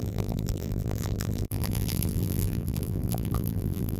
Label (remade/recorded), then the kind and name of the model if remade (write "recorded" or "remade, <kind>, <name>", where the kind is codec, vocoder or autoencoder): remade, vocoder, BigVGAN v2